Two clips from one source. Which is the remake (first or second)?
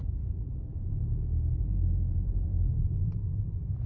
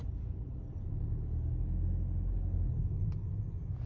first